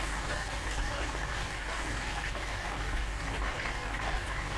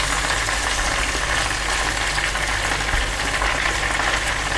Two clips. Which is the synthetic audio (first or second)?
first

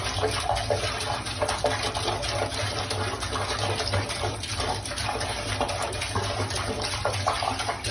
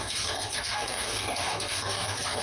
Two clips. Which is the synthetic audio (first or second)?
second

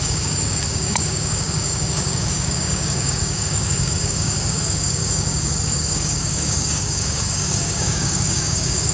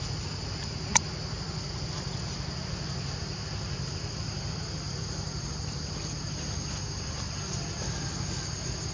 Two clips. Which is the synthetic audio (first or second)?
first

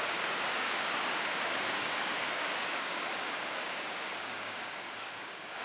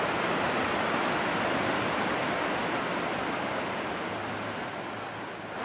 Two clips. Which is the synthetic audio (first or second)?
first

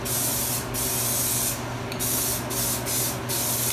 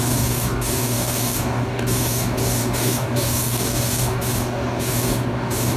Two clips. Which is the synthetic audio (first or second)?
second